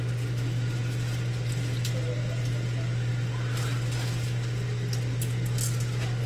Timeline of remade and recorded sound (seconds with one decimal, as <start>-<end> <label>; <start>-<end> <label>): 0.0-6.3 recorded